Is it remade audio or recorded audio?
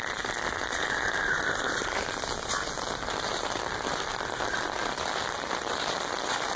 recorded